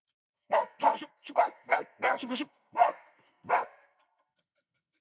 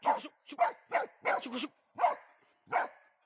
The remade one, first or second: first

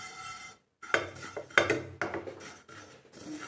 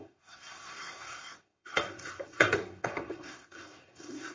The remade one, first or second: second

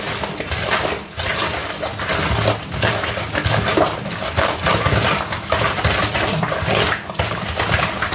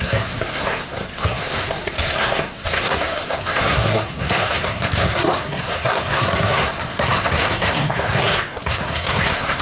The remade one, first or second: second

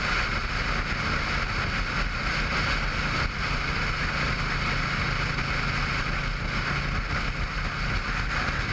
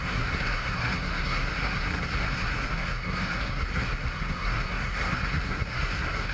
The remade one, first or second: second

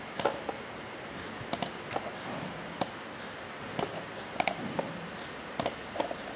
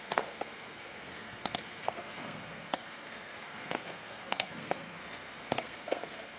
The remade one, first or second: second